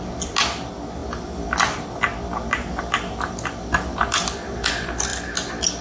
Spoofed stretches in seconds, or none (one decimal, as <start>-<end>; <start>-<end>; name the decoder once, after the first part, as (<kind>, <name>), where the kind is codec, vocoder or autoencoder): none